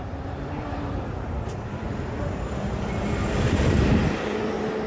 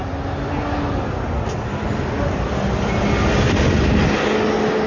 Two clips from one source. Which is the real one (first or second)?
second